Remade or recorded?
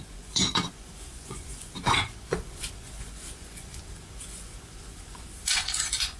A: remade